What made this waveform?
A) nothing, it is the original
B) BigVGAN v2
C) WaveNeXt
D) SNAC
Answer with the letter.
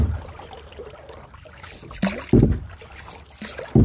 A